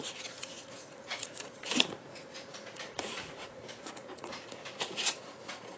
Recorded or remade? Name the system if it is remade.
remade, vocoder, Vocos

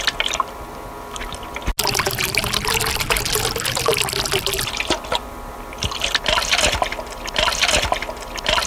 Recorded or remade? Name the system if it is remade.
recorded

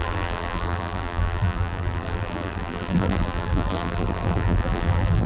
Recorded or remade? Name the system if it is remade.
remade, vocoder, BigVGAN v2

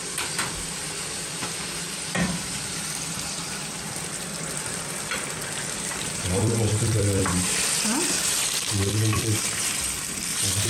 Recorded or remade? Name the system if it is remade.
remade, vocoder, BigVGAN v2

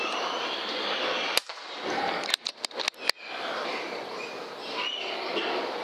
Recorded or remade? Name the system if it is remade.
recorded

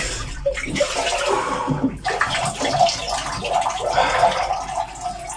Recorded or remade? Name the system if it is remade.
recorded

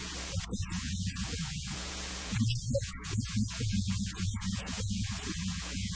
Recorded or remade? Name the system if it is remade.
remade, vocoder, Vocos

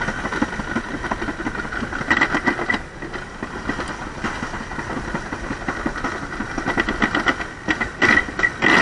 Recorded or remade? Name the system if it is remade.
recorded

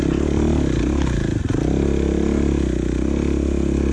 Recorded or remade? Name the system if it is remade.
recorded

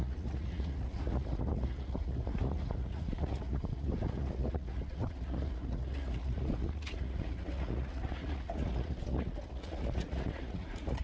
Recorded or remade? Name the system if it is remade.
remade, vocoder, Vocos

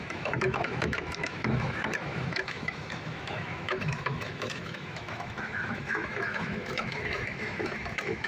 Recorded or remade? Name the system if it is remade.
remade, autoencoder, DAC-VAE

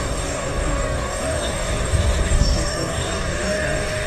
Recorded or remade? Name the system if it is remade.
remade, codec, DAC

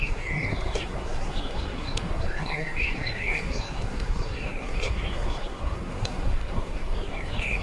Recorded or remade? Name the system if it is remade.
remade, codec, SNAC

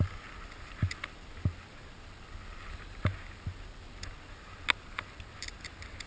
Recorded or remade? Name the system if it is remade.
recorded